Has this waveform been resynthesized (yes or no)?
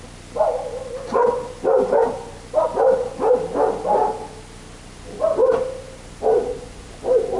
no